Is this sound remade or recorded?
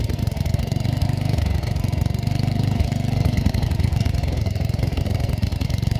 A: remade